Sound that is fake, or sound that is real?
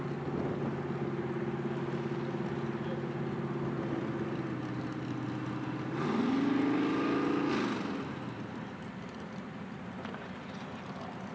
real